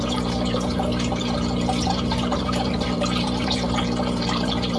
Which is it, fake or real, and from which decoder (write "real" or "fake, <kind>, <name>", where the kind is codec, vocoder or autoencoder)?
fake, vocoder, BigVGAN v2